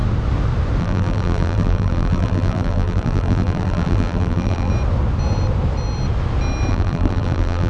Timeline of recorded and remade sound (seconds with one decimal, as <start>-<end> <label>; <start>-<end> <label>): 0.0-0.8 recorded; 0.8-4.7 remade; 4.7-6.7 recorded; 6.7-7.7 remade